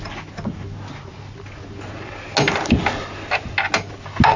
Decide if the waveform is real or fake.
real